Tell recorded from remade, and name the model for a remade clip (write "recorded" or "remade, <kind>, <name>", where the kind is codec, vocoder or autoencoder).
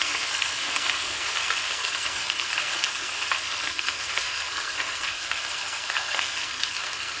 remade, codec, SNAC